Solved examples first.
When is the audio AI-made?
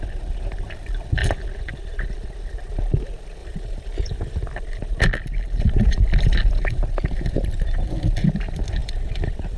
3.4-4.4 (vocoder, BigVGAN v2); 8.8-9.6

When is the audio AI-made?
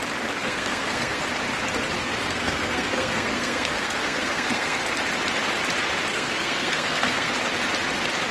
0.4-1.2 (codec, SNAC); 2.0-4.8; 6.1-7.3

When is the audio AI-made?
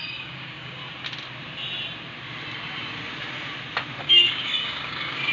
0.0-0.8 (codec, DAC); 4.0-5.3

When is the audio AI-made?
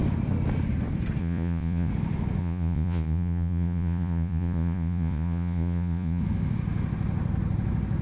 1.2-1.9 (vocoder, Vocos); 2.4-6.2